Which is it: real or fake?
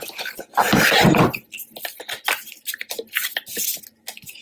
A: real